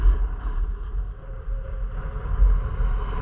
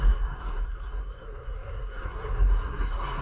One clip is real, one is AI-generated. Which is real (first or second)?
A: first